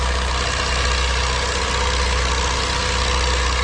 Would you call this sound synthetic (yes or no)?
no